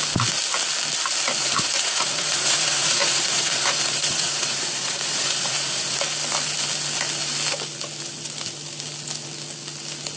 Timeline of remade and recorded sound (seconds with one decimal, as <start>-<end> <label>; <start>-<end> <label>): 0.0-1.4 recorded; 1.4-6.0 remade; 6.0-10.2 recorded